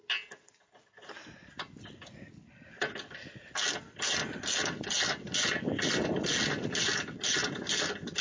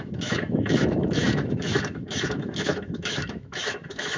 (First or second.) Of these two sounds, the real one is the first